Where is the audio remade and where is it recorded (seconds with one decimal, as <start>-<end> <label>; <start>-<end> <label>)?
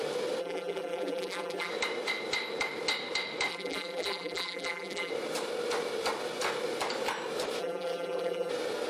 0.0-0.4 recorded; 0.4-1.7 remade; 1.7-3.5 recorded; 3.5-5.1 remade; 5.1-7.6 recorded; 7.6-8.5 remade; 8.5-8.9 recorded